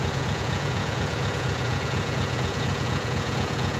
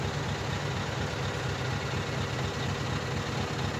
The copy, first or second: first